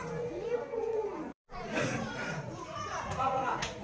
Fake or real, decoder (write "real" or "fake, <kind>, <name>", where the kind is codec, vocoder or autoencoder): fake, vocoder, Vocos